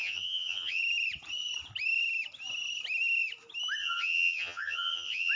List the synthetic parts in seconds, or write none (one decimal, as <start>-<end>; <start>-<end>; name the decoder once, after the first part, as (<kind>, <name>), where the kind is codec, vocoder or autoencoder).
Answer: 0.0-0.8 (vocoder, HiFi-GAN); 3.8-5.3